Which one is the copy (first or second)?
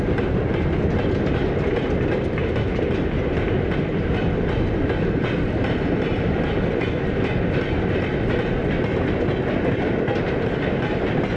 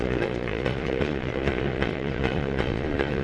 second